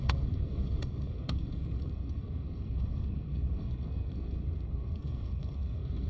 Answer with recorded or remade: remade